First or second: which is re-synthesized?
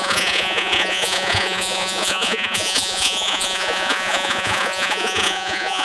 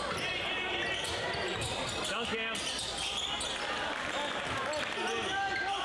first